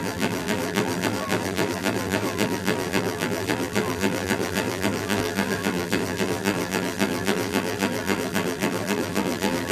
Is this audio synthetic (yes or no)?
yes